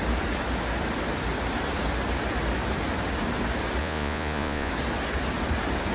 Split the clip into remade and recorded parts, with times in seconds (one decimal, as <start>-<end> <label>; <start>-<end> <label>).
0.0-3.8 recorded; 3.8-4.7 remade; 4.7-5.9 recorded